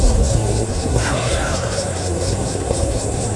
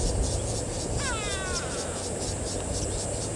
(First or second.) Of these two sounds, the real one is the second